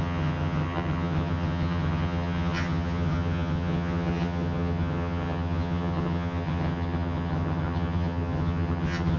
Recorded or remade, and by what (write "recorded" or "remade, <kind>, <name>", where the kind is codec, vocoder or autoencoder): remade, vocoder, HiFi-GAN